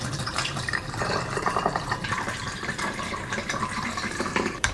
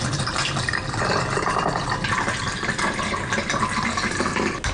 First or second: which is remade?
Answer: first